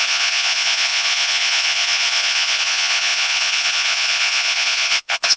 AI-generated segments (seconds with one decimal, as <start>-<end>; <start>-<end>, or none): 0.0-5.4